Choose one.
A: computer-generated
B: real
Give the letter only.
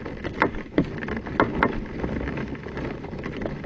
B